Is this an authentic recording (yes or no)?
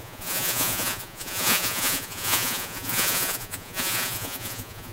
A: no